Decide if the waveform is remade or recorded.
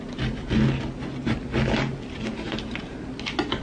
recorded